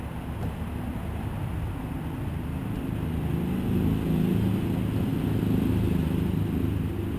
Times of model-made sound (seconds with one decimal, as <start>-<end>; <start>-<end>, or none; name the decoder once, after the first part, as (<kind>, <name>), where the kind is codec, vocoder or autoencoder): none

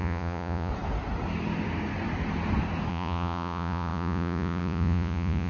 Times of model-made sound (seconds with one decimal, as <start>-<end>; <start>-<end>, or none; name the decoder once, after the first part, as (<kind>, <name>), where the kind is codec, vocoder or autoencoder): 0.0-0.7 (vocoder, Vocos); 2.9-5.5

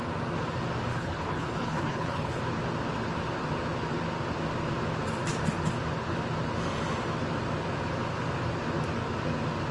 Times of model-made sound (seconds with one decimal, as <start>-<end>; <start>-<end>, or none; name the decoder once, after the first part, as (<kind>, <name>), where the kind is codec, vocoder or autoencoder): 0.9-2.4 (codec, HILCodec)

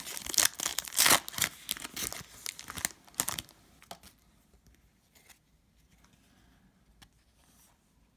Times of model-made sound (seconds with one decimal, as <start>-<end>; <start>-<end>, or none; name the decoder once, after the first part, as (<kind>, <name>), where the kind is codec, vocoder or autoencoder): none

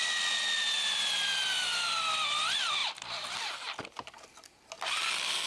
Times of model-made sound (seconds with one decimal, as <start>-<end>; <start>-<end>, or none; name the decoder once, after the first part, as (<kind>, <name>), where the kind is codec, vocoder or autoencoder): none